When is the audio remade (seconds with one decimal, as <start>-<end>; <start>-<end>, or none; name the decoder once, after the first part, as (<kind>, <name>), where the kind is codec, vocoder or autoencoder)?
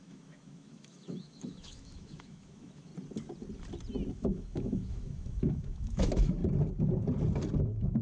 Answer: 0.0-2.9 (autoencoder, DAC-VAE); 4.1-6.4; 7.6-8.0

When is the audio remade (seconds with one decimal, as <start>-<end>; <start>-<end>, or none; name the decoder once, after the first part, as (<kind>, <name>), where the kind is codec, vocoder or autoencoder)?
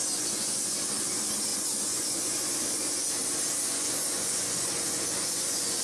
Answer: 0.0-1.1 (vocoder, Vocos); 1.5-3.1; 3.7-5.8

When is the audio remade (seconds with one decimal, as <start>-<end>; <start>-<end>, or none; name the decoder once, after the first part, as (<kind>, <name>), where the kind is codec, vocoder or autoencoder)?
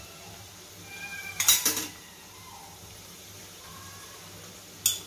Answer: 1.1-4.2 (vocoder, BigVGAN v2)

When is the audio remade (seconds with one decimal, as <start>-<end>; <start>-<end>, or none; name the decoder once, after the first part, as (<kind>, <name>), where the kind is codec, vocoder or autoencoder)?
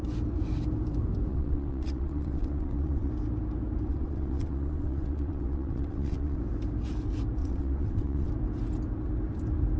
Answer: 1.3-3.1 (vocoder, WaveNeXt); 3.9-6.4; 7.4-8.3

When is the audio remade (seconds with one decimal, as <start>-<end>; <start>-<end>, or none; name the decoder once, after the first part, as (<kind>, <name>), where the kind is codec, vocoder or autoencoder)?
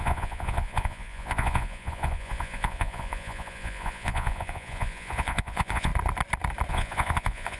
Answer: 0.0-5.9 (vocoder, Vocos); 6.7-7.6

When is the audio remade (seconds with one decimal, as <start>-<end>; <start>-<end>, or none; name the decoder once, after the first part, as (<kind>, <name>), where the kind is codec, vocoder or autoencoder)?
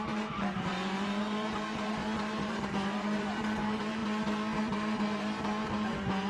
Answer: 0.0-4.0 (vocoder, BigVGAN v2); 4.6-6.3